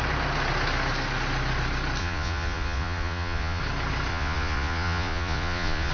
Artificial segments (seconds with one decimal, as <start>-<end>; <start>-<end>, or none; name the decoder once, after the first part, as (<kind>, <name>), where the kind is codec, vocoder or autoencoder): 2.0-3.6 (vocoder, Vocos); 4.1-5.9